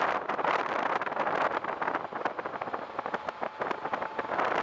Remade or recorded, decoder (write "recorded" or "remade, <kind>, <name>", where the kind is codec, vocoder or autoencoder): recorded